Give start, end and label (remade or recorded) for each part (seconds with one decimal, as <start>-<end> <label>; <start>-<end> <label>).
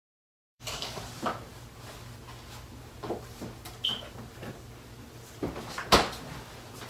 0.0-1.0 remade; 1.0-6.9 recorded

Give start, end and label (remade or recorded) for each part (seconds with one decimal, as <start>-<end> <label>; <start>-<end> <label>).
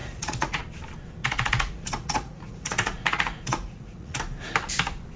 0.0-0.6 remade; 0.6-1.2 recorded; 1.2-4.2 remade; 4.2-5.2 recorded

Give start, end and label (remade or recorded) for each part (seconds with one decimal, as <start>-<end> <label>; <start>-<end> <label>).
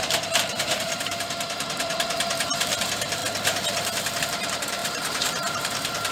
0.0-3.2 remade; 3.2-4.2 recorded; 4.2-6.1 remade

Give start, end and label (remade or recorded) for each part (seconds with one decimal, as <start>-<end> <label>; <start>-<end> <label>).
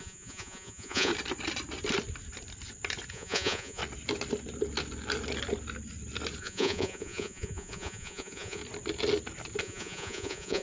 0.0-1.1 remade; 1.1-3.1 recorded; 3.1-3.8 remade; 3.8-6.4 recorded; 6.4-8.6 remade; 8.6-9.6 recorded; 9.6-10.6 remade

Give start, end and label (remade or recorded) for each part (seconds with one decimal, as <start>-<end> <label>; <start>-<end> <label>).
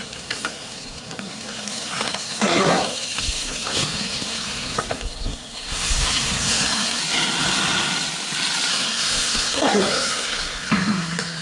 0.0-7.0 remade; 7.0-8.7 recorded; 8.7-11.4 remade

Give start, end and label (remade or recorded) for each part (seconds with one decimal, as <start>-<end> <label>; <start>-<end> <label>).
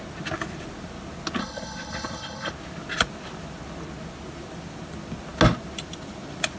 0.0-1.4 recorded; 1.4-2.5 remade; 2.5-6.6 recorded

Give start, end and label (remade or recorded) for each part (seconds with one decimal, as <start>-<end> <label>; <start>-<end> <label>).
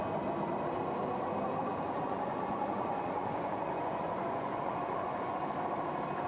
0.0-1.6 recorded; 1.6-5.4 remade; 5.4-6.3 recorded